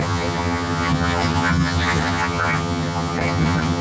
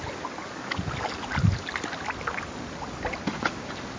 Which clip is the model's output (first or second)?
first